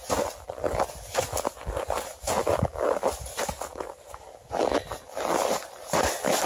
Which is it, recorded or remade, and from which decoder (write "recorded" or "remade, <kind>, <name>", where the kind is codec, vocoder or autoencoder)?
recorded